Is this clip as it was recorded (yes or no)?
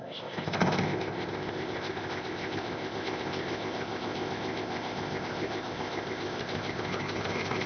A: no